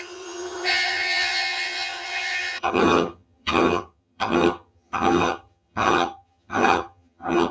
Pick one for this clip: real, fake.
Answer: fake